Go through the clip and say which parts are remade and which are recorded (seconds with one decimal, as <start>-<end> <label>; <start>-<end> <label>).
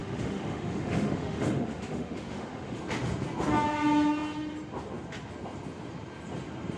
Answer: 0.0-2.8 remade; 2.8-6.8 recorded